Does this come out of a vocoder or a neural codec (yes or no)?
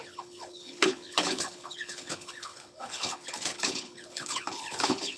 yes